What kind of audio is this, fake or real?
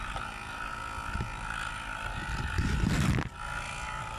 real